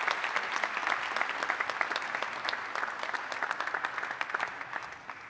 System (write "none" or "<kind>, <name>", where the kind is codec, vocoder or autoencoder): none